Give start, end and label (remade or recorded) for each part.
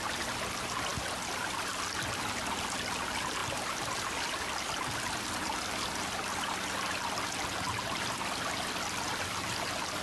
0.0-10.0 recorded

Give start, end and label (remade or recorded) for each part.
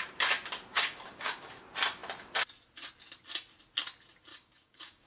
0.0-0.7 recorded; 0.7-1.5 remade; 1.5-4.3 recorded; 4.3-5.1 remade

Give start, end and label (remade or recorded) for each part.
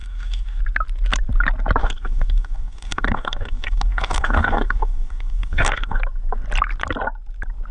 0.0-0.6 remade; 0.6-1.8 recorded; 1.8-6.0 remade; 6.0-7.7 recorded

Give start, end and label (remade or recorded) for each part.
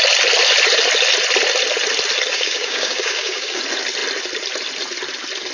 0.0-2.3 recorded; 2.3-3.6 remade; 3.6-5.5 recorded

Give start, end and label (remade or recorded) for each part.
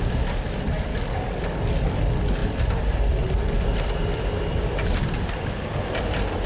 0.0-0.9 recorded; 0.9-2.0 remade; 2.0-6.5 recorded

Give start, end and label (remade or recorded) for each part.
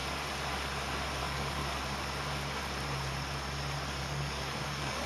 0.0-1.2 recorded; 1.2-1.6 remade; 1.6-4.0 recorded; 4.0-5.1 remade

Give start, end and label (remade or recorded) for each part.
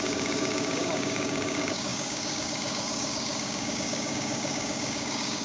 0.0-5.4 remade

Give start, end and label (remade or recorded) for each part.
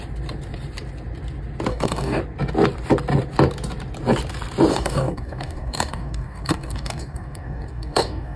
0.0-1.7 recorded; 1.7-2.2 remade; 2.2-4.7 recorded; 4.7-8.4 remade